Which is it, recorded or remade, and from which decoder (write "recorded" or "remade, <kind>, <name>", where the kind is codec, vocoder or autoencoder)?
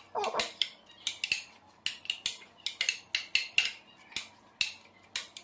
recorded